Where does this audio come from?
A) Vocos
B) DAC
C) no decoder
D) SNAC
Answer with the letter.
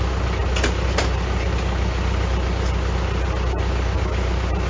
C